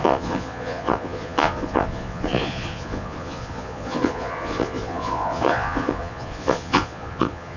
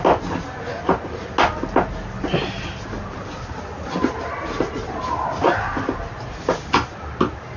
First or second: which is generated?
first